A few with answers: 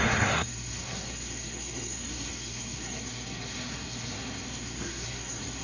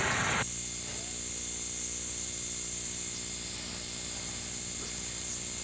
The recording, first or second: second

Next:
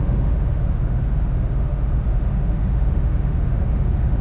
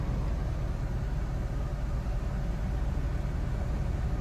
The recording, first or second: second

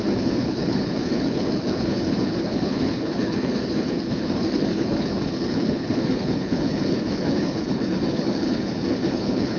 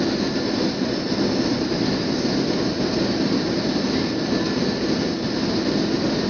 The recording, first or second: second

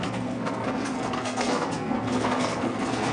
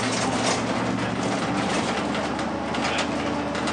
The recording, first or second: second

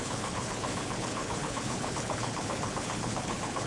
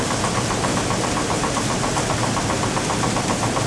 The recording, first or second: second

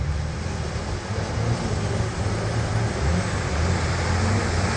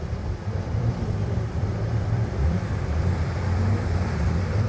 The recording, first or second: first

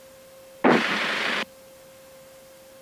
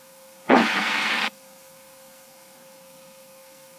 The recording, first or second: first